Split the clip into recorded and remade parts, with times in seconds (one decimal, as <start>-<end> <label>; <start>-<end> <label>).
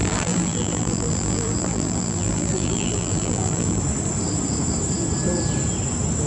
0.0-3.8 remade; 3.8-6.3 recorded